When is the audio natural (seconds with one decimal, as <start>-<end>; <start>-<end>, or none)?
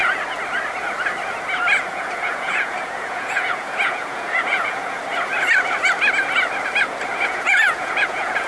0.0-1.9; 5.0-7.1